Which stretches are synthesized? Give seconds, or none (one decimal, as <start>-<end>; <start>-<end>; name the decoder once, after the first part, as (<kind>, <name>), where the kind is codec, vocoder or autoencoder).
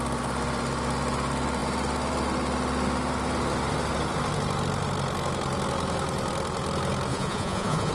7.1-7.9 (vocoder, Vocos)